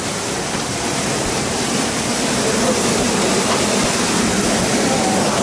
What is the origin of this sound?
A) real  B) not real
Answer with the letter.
A